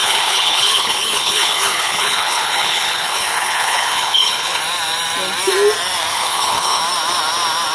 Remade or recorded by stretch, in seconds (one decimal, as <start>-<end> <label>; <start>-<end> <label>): 0.0-4.6 remade; 4.6-6.1 recorded; 6.1-6.8 remade; 6.8-7.7 recorded